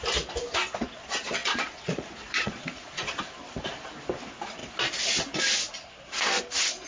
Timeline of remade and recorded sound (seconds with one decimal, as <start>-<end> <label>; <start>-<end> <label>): 0.0-1.4 recorded; 1.4-3.2 remade; 3.2-6.9 recorded